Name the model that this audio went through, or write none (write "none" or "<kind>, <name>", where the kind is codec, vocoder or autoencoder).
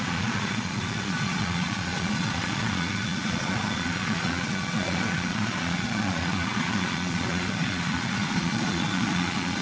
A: vocoder, Vocos